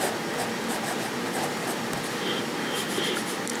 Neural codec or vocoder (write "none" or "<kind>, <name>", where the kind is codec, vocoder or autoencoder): none